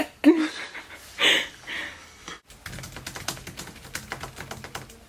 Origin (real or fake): real